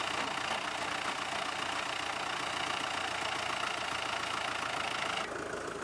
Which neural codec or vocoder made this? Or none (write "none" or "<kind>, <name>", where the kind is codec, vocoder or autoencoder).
none